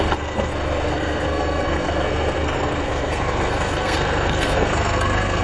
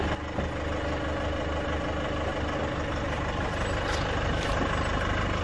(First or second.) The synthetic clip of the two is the first